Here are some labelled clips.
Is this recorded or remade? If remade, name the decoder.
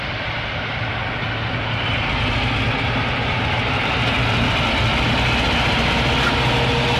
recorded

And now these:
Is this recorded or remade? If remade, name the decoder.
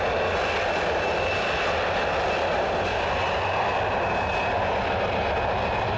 recorded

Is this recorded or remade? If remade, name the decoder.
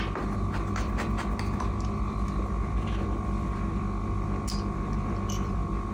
recorded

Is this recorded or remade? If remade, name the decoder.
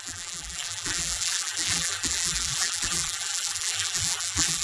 remade, vocoder, BigVGAN v2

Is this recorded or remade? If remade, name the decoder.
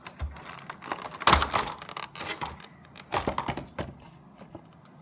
recorded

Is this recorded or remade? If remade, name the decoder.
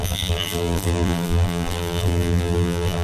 remade, vocoder, BigVGAN v2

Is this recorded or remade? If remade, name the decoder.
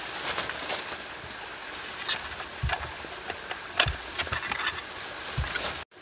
recorded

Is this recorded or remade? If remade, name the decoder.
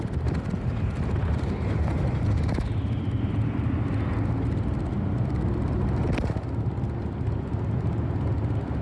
recorded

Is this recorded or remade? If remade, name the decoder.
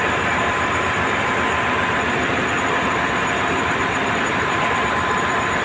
remade, vocoder, BigVGAN v2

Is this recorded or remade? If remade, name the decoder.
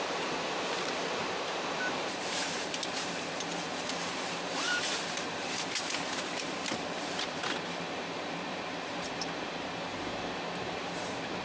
remade, vocoder, BigVGAN v2